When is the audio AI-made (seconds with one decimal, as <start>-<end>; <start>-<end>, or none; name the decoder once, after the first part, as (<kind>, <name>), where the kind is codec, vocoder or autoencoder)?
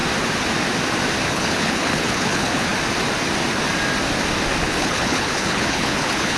1.3-2.7 (codec, HILCodec); 4.6-6.4